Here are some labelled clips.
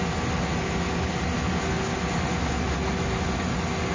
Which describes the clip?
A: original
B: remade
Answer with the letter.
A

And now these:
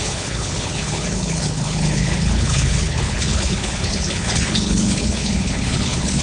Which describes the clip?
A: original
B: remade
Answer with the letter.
B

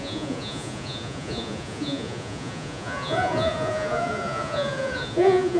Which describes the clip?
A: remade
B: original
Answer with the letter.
A